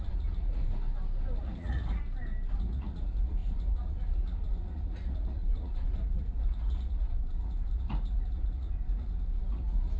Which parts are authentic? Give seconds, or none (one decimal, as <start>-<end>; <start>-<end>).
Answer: 0.6-1.4; 2.0-2.5